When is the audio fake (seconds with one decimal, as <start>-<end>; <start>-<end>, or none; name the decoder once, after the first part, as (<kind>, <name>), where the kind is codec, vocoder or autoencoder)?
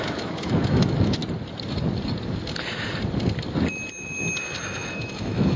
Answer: 0.0-1.2 (autoencoder, DAC-VAE); 4.6-5.6